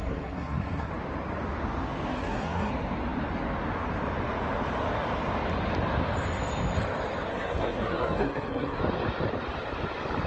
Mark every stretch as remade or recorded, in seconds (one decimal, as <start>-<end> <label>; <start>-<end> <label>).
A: 0.0-0.9 remade; 0.9-2.1 recorded; 2.1-2.7 remade; 2.7-7.3 recorded; 7.3-8.8 remade; 8.8-10.3 recorded